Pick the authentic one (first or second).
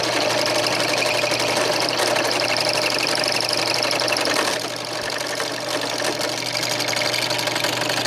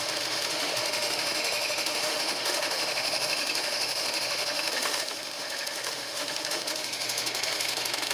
first